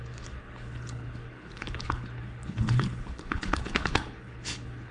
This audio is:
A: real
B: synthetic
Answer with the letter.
B